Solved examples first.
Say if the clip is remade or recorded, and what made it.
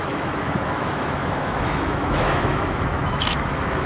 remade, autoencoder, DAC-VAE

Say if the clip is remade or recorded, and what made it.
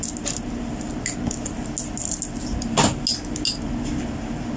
recorded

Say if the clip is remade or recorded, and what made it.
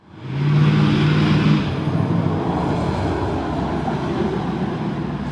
recorded